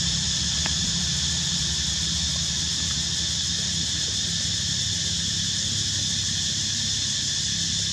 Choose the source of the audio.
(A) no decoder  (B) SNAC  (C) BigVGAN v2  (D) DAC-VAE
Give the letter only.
C